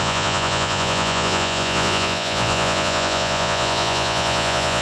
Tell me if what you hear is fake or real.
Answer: fake